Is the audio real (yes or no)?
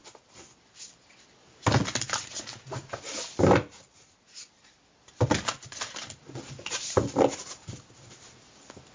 yes